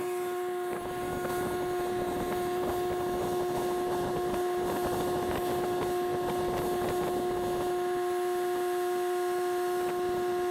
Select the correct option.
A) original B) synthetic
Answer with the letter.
A